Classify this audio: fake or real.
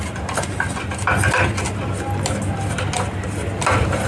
real